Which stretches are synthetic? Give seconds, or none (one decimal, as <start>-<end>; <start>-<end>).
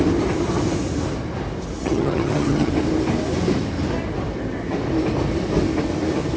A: 1.8-2.7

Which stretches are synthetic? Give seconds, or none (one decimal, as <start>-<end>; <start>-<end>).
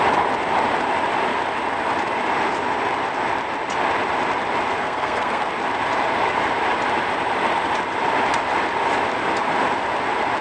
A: 4.8-5.5